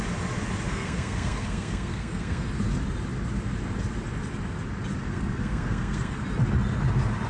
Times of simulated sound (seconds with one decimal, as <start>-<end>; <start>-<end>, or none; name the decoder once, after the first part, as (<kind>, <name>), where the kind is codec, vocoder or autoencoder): 0.7-2.5 (codec, SNAC); 5.1-6.2